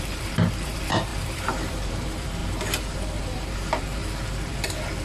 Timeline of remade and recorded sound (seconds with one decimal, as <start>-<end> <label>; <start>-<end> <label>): 0.0-2.4 remade; 2.4-3.2 recorded; 3.2-4.0 remade; 4.0-5.0 recorded